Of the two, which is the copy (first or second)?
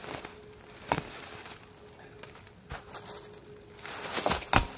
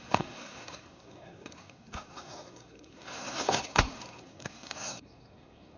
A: second